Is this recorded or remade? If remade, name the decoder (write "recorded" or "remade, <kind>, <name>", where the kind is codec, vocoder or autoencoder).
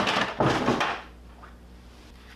recorded